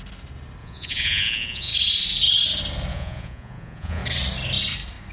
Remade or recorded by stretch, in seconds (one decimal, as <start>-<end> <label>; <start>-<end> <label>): 0.0-0.6 recorded; 0.6-1.7 remade; 1.7-2.9 recorded; 2.9-4.0 remade; 4.0-5.1 recorded